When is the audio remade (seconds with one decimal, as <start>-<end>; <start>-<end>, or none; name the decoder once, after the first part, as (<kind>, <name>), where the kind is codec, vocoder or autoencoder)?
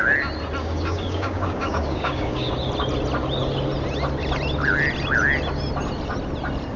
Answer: 0.6-2.5 (codec, DAC)